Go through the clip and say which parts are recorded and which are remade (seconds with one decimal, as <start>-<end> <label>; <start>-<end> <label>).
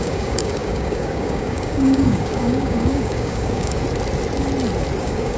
0.0-3.8 remade; 3.8-5.0 recorded; 5.0-5.4 remade